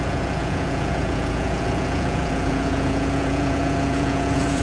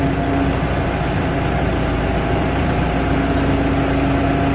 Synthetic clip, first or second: first